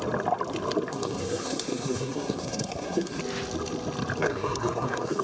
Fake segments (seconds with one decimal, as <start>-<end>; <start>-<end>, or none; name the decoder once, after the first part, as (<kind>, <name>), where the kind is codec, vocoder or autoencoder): 0.9-3.2 (codec, SNAC); 4.2-5.2